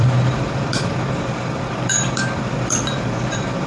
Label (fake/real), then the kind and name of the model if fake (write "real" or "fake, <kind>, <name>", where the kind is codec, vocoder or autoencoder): fake, vocoder, BigVGAN v2